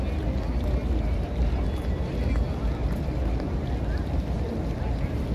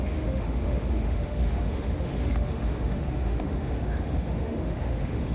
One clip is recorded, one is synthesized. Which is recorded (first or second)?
first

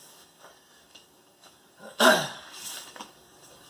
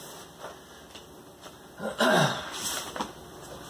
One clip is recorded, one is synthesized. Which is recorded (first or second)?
second